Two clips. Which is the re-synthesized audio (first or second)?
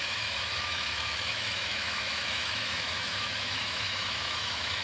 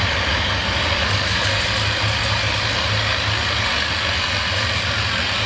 first